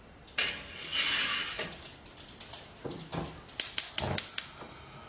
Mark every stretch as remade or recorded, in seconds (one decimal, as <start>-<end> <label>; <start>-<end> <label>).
0.0-5.1 recorded